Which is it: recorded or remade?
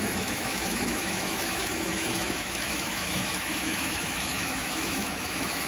remade